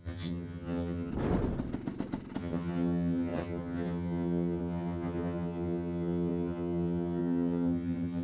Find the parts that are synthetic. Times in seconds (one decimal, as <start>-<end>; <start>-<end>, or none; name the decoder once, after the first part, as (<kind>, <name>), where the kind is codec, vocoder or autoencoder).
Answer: 0.0-1.1 (vocoder, HiFi-GAN); 2.4-8.2